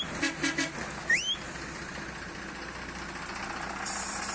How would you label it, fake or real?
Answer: real